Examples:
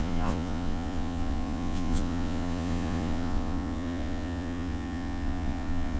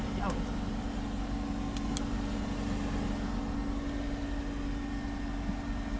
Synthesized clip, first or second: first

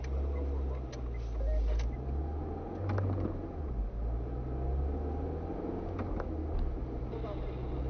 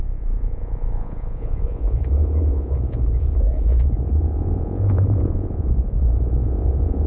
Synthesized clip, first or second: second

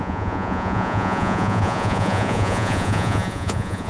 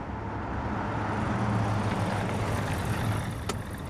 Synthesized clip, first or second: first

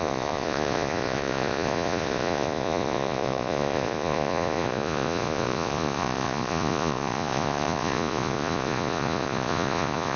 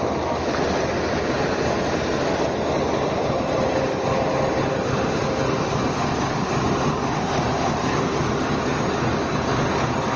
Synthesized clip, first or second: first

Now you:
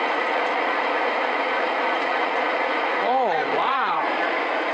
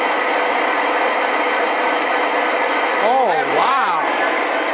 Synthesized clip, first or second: first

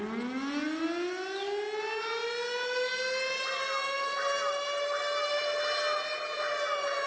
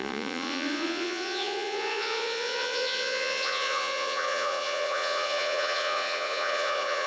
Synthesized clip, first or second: second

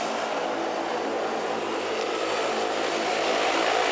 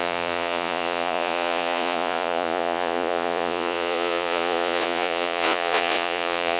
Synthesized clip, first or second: second